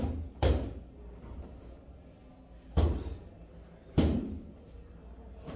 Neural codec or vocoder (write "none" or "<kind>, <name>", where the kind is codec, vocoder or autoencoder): none